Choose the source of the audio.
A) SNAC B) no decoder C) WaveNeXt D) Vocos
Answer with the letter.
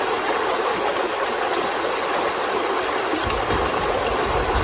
B